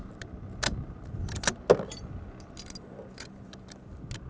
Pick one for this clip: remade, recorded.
recorded